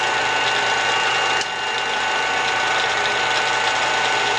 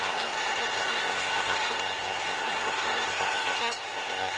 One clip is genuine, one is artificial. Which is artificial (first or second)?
second